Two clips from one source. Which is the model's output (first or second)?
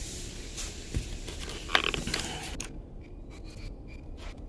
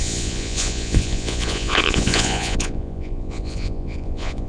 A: second